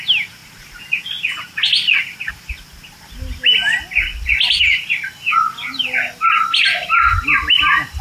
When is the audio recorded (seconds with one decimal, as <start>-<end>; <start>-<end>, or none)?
0.0-8.0